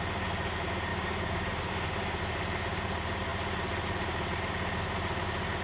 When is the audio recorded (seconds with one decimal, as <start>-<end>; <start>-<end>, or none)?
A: 0.0-0.9; 2.2-5.6

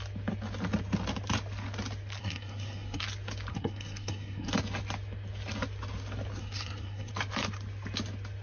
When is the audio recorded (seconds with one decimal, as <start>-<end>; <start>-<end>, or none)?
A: 0.0-2.2; 3.0-3.5; 4.5-6.4; 7.1-8.4

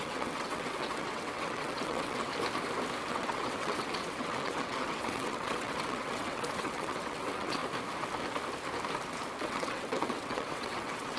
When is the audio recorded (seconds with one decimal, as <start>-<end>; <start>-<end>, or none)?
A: 2.3-3.1; 7.6-9.4

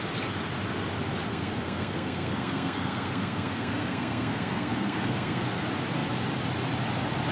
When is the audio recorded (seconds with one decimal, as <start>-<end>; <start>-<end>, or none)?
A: 0.0-1.3; 5.6-7.3

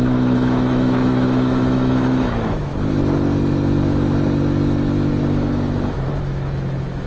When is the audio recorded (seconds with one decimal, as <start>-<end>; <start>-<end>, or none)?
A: 2.7-6.2

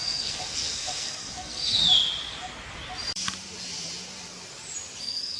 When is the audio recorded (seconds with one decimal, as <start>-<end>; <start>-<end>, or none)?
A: 1.8-5.0